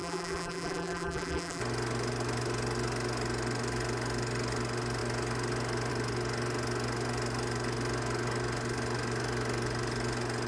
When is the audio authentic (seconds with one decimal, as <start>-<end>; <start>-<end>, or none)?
1.6-10.5